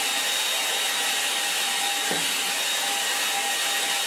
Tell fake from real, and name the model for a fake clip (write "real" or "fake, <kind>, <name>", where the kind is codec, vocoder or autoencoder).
real